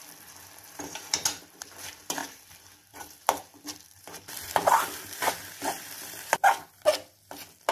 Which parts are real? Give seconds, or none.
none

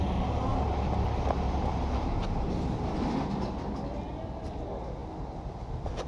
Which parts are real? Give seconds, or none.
0.0-6.1